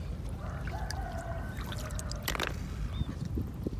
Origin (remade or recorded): recorded